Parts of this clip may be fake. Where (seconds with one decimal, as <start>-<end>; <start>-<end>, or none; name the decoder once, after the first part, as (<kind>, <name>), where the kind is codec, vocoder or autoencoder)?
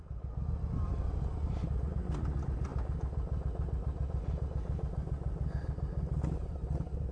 none